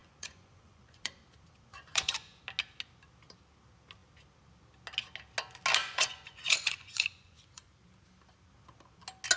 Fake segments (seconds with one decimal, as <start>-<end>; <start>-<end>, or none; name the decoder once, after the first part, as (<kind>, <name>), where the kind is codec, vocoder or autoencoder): 0.0-1.1 (vocoder, Vocos); 1.7-2.4; 5.8-7.7